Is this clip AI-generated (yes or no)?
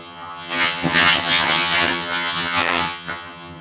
yes